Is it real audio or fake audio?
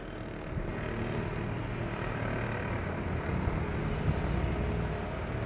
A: real